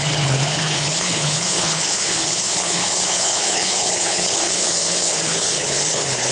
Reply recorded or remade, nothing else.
remade